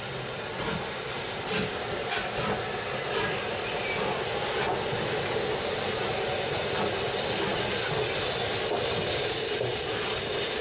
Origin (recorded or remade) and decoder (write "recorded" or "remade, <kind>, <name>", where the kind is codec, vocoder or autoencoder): recorded